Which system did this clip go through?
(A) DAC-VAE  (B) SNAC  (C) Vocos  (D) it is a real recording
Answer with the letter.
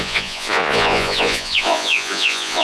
C